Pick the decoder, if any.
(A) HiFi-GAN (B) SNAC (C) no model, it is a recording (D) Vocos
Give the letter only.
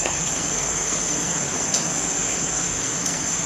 B